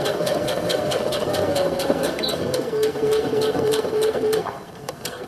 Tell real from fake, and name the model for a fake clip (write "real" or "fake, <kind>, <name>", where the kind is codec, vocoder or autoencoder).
fake, codec, SNAC